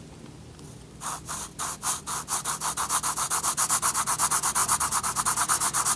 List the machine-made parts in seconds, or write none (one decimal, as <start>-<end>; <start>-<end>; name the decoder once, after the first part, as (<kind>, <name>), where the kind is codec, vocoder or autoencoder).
none